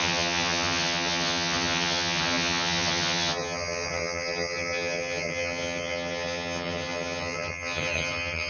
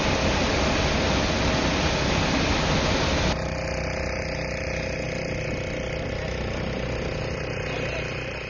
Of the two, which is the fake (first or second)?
first